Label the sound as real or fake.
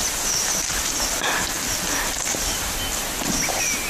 real